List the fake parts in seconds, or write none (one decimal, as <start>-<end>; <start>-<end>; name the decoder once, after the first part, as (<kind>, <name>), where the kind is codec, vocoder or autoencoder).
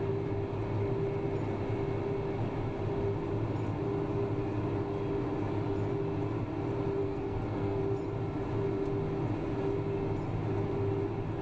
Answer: 7.0-7.8 (codec, SNAC)